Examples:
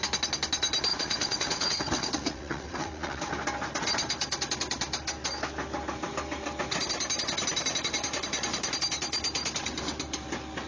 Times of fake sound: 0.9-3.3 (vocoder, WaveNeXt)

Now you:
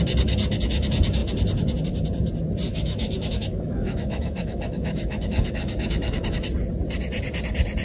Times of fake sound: 2.7-6.2 (autoencoder, DAC-VAE)

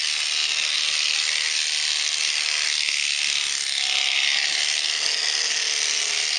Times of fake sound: none

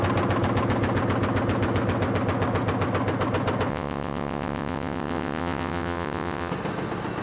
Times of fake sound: 3.7-6.5 (vocoder, WaveNeXt)

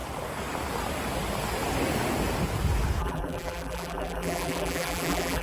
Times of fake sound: 3.0-5.4 (vocoder, BigVGAN v2)

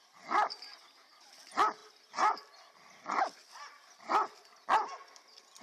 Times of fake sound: none

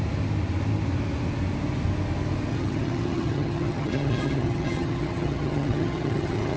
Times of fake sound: 2.5-6.6 (vocoder, HiFi-GAN)